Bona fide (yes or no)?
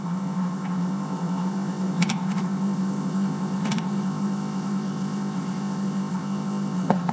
no